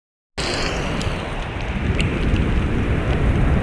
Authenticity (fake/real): real